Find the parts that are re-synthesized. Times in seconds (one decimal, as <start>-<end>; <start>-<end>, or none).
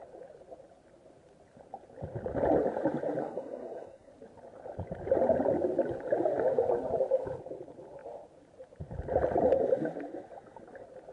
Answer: 3.2-4.1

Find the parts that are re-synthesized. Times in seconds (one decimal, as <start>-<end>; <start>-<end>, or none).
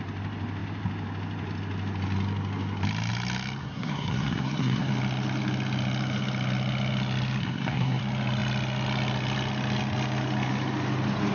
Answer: 3.6-4.9; 7.4-8.0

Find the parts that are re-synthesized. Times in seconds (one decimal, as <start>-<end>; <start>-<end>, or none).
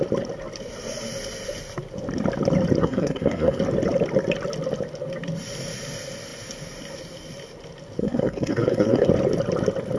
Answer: 2.8-3.6; 8.0-9.1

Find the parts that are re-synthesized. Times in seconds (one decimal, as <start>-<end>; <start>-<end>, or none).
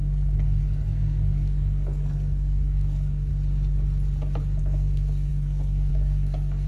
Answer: 0.0-3.3; 4.6-6.7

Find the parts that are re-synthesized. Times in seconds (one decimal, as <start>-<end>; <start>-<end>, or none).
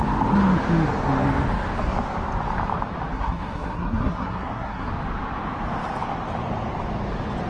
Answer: 3.1-4.9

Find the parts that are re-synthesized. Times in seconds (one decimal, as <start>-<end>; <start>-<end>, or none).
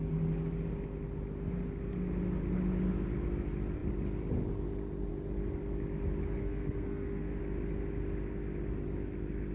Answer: 6.4-7.4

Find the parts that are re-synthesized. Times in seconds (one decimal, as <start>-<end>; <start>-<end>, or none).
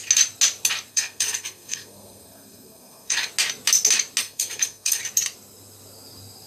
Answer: 0.9-3.3; 4.2-5.0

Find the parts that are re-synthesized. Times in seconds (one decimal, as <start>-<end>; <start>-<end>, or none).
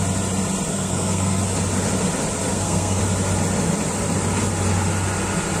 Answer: 0.7-1.4; 2.5-3.0